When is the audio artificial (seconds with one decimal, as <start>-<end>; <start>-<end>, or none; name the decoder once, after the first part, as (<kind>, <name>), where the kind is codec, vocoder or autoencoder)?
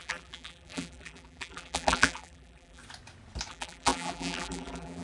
0.0-2.8 (vocoder, BigVGAN v2); 3.5-5.0